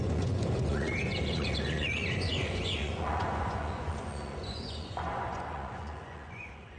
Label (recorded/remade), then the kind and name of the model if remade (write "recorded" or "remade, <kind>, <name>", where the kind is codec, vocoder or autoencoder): remade, vocoder, Vocos